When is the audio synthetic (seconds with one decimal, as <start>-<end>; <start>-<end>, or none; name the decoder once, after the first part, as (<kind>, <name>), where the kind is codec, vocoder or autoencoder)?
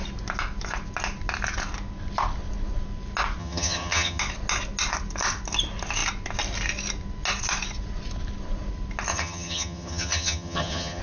3.4-4.2 (vocoder, HiFi-GAN); 9.1-11.0